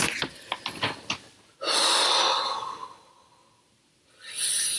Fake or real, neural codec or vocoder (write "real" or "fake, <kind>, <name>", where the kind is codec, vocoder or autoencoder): real